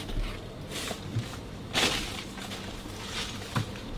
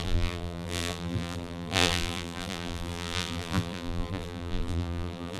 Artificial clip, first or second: second